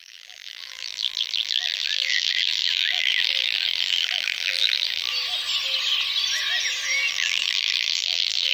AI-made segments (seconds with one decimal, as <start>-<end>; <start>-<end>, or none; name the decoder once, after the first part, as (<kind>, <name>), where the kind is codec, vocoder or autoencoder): 0.0-5.1 (vocoder, BigVGAN v2); 7.1-8.5

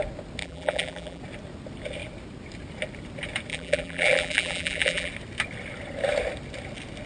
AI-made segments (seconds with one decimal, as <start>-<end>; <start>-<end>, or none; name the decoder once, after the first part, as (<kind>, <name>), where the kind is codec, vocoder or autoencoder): 0.4-1.2 (vocoder, BigVGAN v2); 3.5-5.1

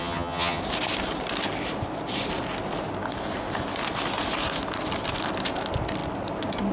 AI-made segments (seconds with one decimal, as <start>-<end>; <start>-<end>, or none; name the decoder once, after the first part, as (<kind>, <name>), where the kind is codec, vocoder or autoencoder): 0.0-0.6 (vocoder, HiFi-GAN)

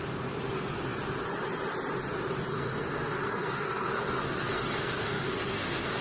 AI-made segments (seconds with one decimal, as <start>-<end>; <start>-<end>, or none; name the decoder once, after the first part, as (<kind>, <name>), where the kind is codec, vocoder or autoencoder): 2.5-6.0 (codec, SNAC)

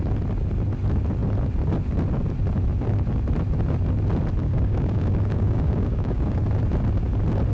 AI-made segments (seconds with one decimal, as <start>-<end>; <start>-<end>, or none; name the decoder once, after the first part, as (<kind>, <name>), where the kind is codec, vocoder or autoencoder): 4.4-6.3 (codec, DAC)

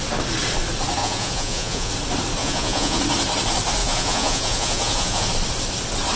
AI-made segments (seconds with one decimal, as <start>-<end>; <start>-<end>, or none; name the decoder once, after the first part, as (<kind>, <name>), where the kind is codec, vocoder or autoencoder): 1.0-1.9 (vocoder, Vocos); 2.4-3.0; 3.8-5.3

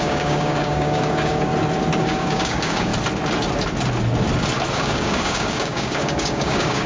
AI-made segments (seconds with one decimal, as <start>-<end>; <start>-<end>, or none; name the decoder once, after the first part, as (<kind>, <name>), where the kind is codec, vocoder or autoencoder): 0.0-1.5 (codec, DAC); 2.0-2.9; 4.7-6.9

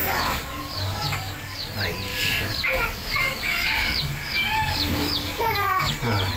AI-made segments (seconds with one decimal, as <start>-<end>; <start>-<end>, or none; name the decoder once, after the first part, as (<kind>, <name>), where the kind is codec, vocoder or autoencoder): 0.0-1.7 (codec, DAC); 2.1-5.9